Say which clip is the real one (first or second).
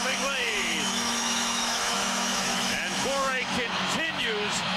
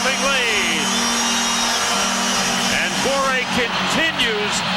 second